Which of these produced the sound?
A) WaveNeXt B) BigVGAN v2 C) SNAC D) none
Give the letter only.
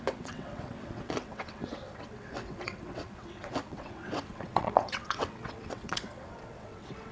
A